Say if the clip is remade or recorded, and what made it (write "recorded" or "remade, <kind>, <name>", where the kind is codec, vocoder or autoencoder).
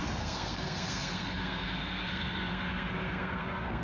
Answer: remade, codec, SNAC